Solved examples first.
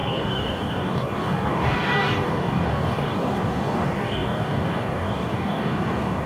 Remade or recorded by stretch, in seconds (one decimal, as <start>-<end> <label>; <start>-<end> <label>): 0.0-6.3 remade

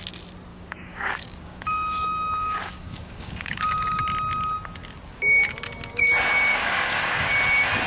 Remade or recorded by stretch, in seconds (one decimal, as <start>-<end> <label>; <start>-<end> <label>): 0.0-0.5 recorded; 0.5-4.0 remade; 4.0-6.5 recorded; 6.5-7.3 remade; 7.3-7.9 recorded

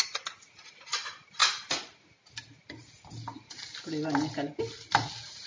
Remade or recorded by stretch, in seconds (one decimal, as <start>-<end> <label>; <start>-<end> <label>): 0.0-5.5 recorded

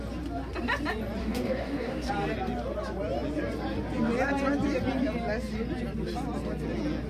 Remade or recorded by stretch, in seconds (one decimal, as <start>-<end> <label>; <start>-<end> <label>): 0.0-1.2 recorded; 1.2-2.1 remade; 2.1-7.1 recorded